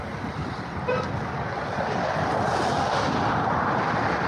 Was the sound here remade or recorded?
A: recorded